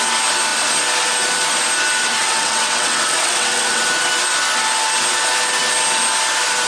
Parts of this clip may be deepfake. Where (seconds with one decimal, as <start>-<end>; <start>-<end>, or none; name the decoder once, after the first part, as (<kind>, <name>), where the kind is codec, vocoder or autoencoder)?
2.2-3.8 (vocoder, WaveNeXt)